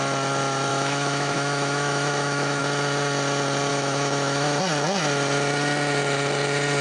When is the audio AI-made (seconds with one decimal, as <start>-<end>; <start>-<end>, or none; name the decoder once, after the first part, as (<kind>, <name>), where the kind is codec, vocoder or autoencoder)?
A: 0.7-2.6 (autoencoder, DAC-VAE); 3.7-4.6